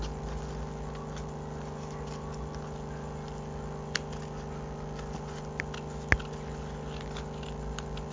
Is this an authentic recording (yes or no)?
yes